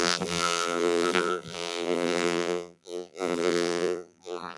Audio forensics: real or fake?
fake